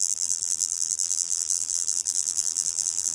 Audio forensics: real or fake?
fake